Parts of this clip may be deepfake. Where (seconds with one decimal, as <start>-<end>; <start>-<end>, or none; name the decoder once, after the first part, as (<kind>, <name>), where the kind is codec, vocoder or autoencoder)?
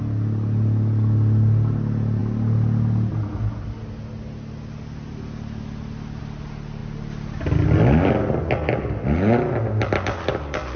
none